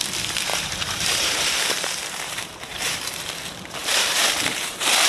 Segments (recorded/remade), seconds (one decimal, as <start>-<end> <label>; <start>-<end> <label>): 0.0-0.5 recorded; 0.5-3.0 remade; 3.0-3.8 recorded; 3.8-5.1 remade